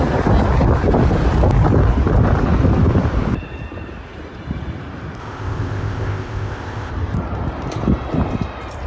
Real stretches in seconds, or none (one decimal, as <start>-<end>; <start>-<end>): 0.0-5.2; 6.9-8.9